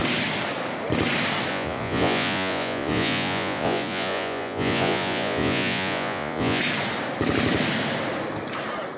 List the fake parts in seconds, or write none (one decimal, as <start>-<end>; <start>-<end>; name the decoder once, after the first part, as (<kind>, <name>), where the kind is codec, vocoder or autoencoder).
1.5-6.6 (vocoder, Vocos)